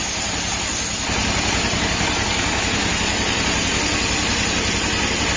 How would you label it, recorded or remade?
recorded